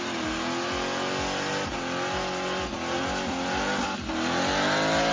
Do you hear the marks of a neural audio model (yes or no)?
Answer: no